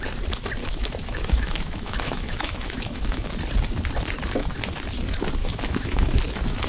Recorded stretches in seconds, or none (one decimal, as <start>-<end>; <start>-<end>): 0.0-0.6; 3.3-5.4; 6.2-6.7